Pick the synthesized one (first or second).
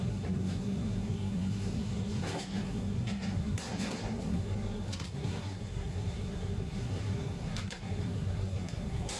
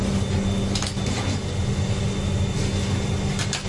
first